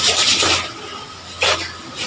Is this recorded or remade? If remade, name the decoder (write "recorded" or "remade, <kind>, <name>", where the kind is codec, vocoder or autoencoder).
recorded